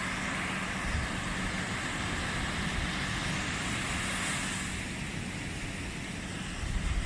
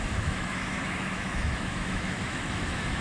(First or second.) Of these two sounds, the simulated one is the second